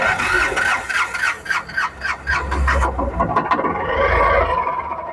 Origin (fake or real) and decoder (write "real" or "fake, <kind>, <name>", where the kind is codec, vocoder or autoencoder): real